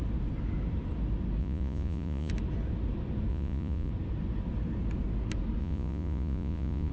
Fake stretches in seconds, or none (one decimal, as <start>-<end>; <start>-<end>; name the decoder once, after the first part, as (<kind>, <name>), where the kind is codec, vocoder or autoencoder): 1.4-2.3 (vocoder, Vocos); 3.3-3.9; 5.6-6.9

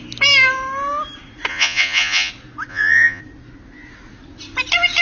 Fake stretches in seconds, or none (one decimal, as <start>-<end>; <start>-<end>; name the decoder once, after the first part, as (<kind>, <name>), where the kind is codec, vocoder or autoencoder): 1.5-2.3 (vocoder, Vocos); 2.7-3.2

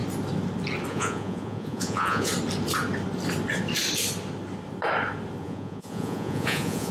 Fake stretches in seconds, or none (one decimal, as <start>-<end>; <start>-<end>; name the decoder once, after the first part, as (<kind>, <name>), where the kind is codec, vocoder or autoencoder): 0.9-2.3 (vocoder, Vocos); 5.4-6.9

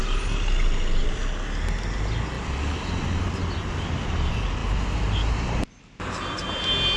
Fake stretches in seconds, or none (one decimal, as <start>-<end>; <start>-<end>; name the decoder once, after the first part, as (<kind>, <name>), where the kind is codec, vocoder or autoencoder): none

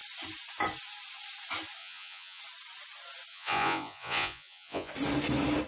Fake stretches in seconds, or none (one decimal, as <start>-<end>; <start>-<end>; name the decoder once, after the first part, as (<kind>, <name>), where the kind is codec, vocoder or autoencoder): 1.8-2.4 (vocoder, Vocos); 3.3-4.9

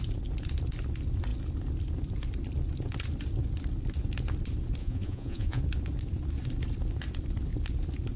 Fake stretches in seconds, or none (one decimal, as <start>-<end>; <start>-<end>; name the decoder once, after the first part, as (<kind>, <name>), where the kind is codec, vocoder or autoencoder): 4.8-5.6 (vocoder, Vocos)

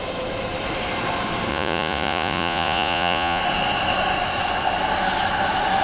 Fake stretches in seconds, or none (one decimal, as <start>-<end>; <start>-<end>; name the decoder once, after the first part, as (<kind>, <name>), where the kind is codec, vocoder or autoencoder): 1.5-3.4 (vocoder, Vocos)

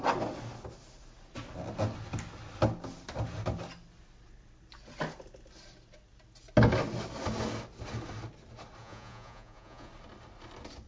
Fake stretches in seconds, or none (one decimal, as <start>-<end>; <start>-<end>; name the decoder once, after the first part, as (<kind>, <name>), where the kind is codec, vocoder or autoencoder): 8.8-9.9 (vocoder, Vocos)